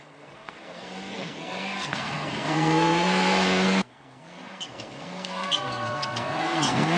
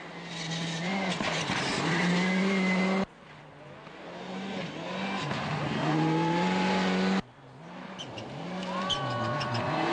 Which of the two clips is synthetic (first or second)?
first